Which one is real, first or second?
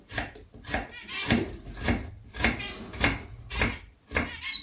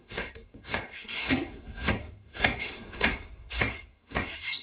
first